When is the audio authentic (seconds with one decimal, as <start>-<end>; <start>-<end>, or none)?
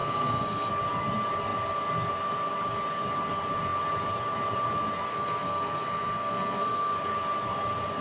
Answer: 0.7-5.1; 7.0-8.0